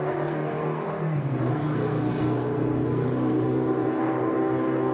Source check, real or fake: fake